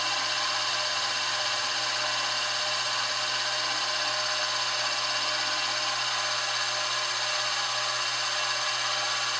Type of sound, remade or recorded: recorded